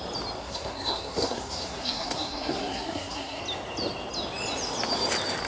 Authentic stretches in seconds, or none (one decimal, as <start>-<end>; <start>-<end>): 0.0-0.4; 3.4-5.5